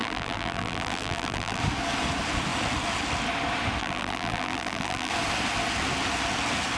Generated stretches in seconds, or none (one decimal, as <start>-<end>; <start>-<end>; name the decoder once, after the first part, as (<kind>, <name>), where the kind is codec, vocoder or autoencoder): 0.0-1.6 (vocoder, BigVGAN v2); 3.8-5.1